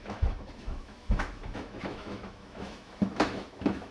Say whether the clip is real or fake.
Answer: fake